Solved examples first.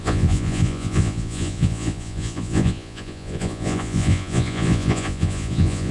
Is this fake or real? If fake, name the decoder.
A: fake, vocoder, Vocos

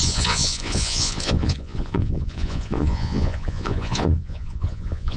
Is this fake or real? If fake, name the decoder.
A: fake, vocoder, Vocos